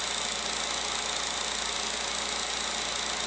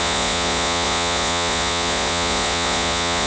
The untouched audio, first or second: first